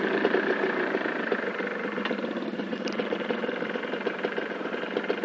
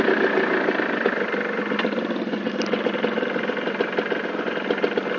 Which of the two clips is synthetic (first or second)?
first